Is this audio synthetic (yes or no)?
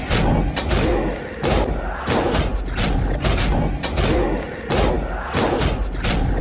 no